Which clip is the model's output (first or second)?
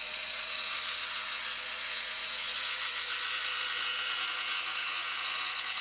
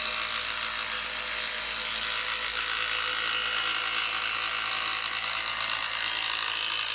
first